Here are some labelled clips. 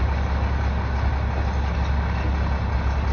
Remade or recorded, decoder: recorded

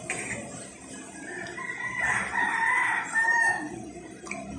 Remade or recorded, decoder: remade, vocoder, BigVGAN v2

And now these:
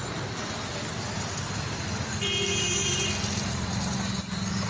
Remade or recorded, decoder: recorded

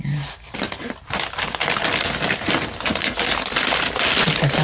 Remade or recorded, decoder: recorded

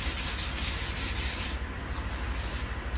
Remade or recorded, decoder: recorded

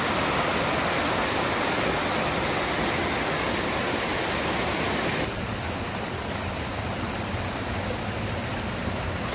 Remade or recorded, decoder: recorded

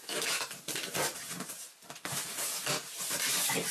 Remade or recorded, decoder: recorded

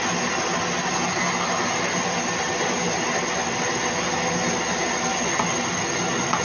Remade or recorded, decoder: recorded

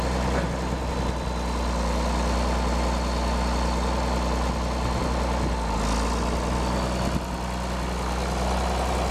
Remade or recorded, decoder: recorded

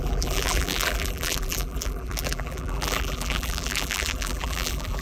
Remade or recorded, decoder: remade, vocoder, BigVGAN v2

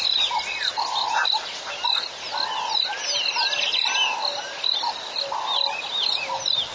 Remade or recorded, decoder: recorded